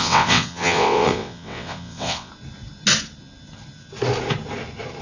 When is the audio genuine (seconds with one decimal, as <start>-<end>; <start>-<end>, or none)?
2.3-5.0

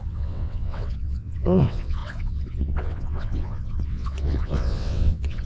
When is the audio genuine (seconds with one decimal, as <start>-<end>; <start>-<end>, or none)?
none

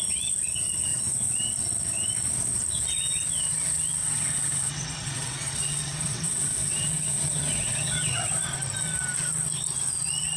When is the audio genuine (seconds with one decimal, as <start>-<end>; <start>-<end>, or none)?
0.0-4.0; 8.3-10.4

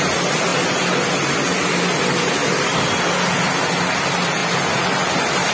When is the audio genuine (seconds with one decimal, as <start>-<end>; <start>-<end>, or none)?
0.0-5.5

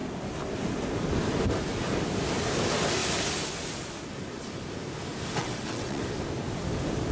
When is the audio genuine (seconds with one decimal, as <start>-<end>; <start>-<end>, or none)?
0.0-5.4; 6.0-7.1